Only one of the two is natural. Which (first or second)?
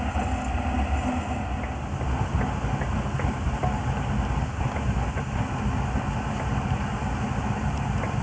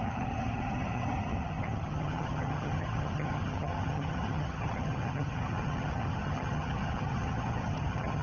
first